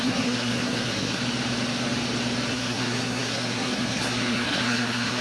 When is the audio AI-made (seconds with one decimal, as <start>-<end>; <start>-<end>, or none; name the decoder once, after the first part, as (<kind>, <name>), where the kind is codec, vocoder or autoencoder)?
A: 0.0-1.2 (codec, SNAC); 2.5-5.2